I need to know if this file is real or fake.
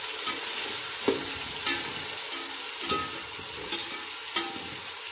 real